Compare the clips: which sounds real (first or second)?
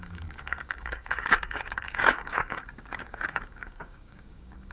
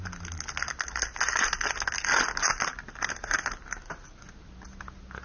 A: second